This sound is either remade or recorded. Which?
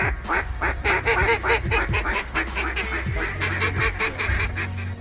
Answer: recorded